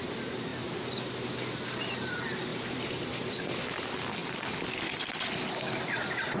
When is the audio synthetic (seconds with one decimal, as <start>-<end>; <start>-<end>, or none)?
2.5-3.6